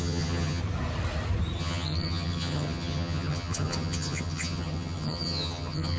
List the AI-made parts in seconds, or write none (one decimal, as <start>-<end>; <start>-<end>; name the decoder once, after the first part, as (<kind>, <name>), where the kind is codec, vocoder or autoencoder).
0.0-0.6 (vocoder, HiFi-GAN); 1.6-6.0